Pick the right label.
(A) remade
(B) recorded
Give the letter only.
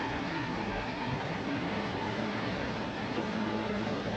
A